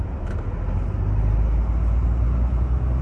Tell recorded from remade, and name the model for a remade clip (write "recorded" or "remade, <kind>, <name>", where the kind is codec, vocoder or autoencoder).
recorded